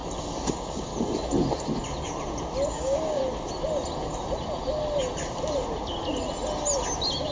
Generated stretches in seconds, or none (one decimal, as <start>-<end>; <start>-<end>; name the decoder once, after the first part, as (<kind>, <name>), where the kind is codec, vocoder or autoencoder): 0.5-0.9 (codec, DAC); 2.7-3.2